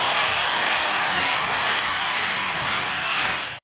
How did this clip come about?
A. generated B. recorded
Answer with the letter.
A